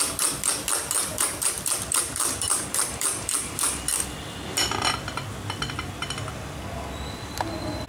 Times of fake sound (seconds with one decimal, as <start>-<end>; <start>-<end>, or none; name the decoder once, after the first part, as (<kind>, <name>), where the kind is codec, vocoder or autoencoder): 1.1-3.8 (vocoder, BigVGAN v2)